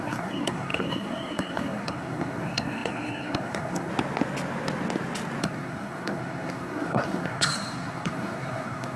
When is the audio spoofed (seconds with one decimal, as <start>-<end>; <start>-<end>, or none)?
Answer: 0.0-3.9; 5.4-9.0